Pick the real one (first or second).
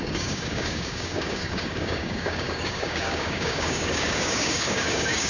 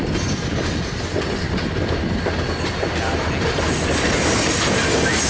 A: second